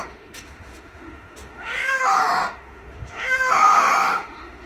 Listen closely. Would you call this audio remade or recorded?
remade